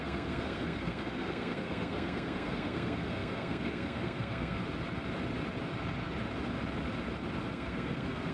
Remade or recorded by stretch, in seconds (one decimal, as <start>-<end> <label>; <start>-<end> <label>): 0.0-4.6 remade; 4.6-7.5 recorded; 7.5-8.3 remade